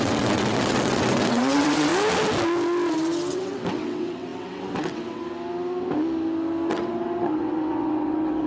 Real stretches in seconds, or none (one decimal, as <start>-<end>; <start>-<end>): 1.9-3.3; 5.2-6.7